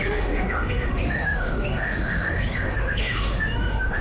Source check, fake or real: fake